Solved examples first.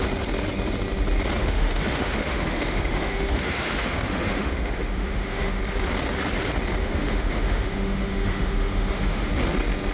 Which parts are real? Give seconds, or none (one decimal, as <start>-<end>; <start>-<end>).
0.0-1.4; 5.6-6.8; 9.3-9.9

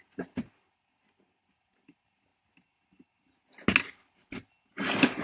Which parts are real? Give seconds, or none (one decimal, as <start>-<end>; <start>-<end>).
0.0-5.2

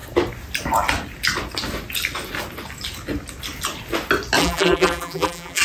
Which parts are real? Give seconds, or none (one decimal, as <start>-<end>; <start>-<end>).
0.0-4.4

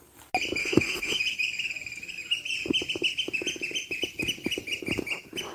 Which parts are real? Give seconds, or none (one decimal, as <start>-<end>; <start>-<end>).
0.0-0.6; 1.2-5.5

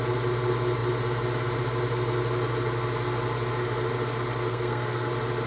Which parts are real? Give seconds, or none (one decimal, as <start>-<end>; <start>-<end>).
0.0-4.5; 5.1-5.5